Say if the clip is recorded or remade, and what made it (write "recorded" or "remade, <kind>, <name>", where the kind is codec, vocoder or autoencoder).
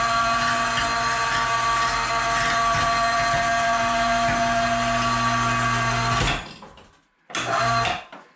recorded